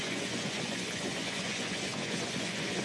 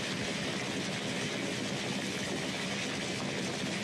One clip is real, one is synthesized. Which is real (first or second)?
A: second